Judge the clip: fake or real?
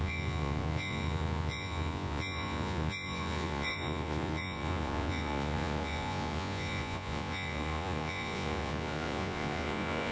fake